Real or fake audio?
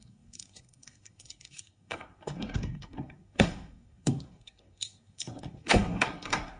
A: fake